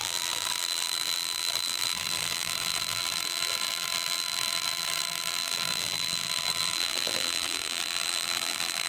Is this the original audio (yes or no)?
no